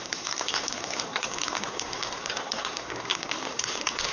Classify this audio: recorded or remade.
remade